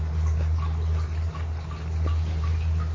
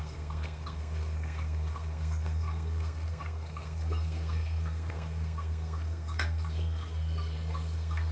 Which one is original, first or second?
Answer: first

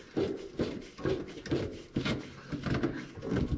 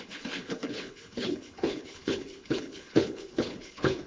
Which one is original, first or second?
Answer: first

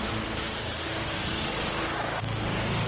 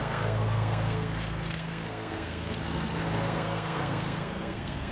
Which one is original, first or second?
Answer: first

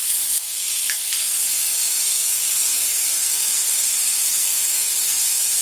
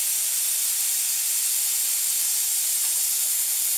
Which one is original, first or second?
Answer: second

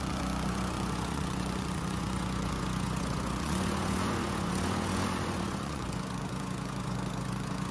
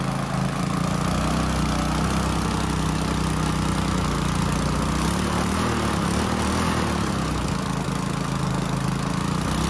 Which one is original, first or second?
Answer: second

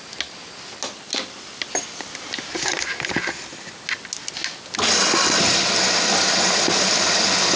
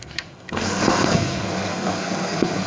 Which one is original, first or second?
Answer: first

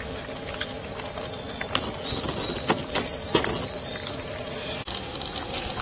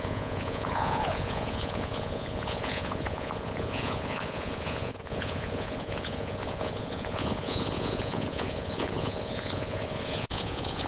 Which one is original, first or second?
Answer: first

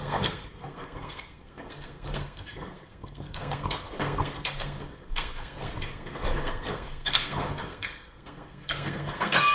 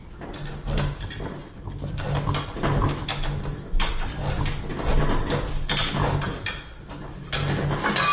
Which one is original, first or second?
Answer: second